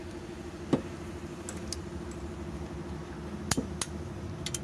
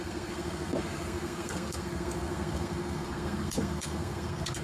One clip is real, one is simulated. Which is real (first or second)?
first